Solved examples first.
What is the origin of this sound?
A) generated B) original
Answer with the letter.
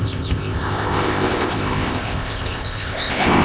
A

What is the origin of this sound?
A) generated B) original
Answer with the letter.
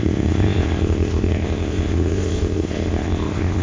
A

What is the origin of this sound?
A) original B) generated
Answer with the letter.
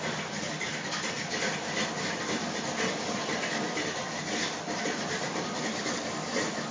A